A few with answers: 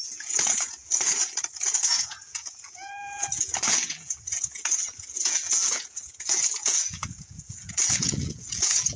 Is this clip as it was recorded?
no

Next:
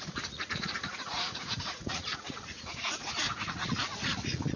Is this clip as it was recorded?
no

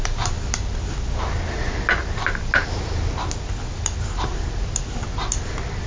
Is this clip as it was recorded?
yes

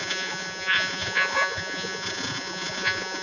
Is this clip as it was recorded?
no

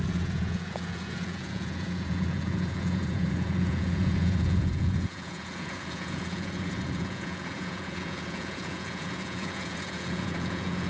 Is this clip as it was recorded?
no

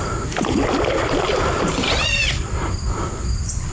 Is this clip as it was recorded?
yes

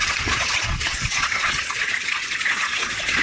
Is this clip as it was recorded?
no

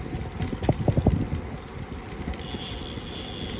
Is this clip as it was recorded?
yes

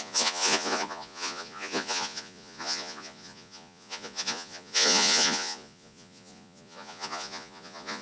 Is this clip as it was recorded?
no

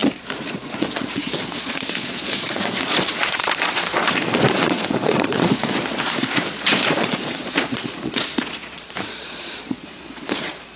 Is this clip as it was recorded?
no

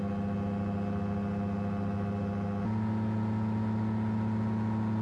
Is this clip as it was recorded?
yes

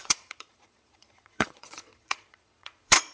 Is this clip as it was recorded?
no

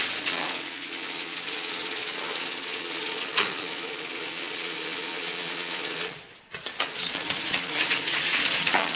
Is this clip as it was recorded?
no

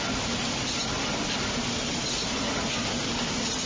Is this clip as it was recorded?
yes